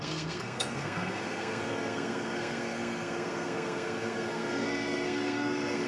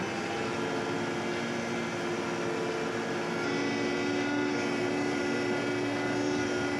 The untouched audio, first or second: second